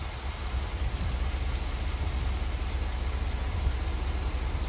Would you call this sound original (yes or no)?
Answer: yes